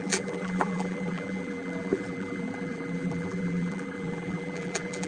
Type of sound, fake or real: fake